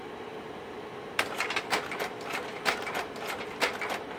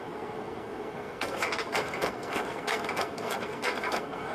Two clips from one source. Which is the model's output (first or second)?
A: second